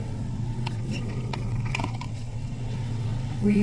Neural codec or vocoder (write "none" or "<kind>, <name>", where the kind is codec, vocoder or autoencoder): vocoder, WaveNeXt